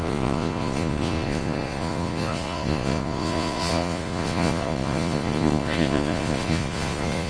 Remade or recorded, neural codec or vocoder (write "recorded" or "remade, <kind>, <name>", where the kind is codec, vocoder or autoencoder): remade, vocoder, Vocos